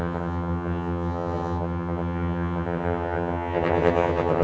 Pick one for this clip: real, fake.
fake